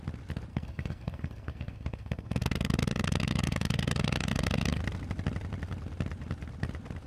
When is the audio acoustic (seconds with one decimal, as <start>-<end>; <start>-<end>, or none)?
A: 0.0-0.5; 4.8-7.1